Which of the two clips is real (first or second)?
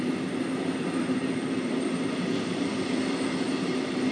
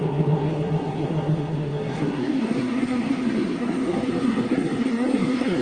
first